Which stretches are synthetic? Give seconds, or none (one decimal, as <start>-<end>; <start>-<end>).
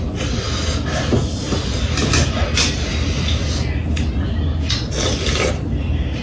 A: none